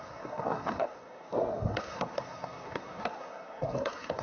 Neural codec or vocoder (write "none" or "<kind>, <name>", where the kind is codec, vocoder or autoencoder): codec, SNAC